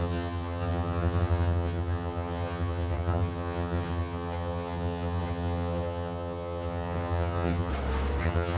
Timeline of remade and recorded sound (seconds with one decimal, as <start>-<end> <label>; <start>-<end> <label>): 0.0-7.7 remade; 7.7-8.2 recorded; 8.2-8.6 remade